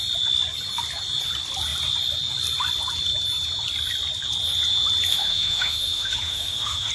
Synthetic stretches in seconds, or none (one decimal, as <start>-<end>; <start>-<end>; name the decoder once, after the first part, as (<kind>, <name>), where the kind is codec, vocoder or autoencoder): 5.1-6.9 (autoencoder, DAC-VAE)